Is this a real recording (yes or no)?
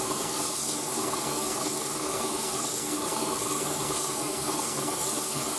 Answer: no